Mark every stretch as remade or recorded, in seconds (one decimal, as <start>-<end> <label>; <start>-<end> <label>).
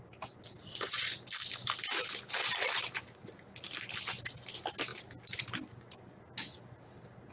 0.0-0.6 recorded; 0.6-1.1 remade; 1.1-7.3 recorded